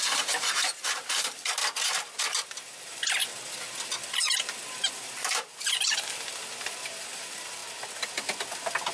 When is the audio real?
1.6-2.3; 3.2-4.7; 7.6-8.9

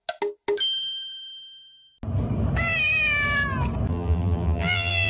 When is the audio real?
0.0-3.9

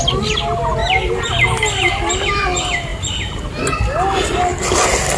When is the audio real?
0.0-5.2